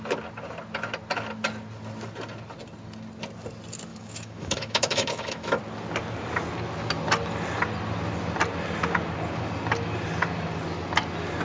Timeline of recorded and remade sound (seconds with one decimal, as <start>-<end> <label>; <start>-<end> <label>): 0.0-3.9 recorded; 3.9-5.6 remade; 5.6-11.4 recorded